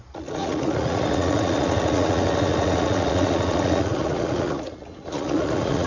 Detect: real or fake fake